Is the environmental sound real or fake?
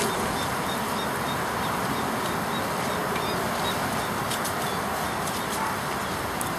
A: real